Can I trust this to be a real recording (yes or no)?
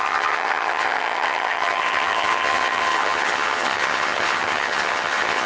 no